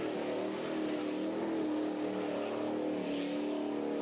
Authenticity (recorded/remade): recorded